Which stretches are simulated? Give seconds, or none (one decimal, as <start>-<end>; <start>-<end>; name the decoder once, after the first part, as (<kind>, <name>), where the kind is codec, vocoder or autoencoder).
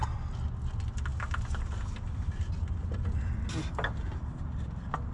none